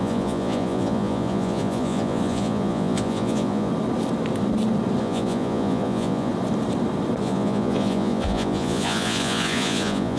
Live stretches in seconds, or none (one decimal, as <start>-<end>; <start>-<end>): 3.7-5.0; 6.3-7.2